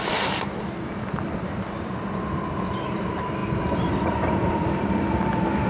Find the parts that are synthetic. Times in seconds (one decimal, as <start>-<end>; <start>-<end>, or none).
none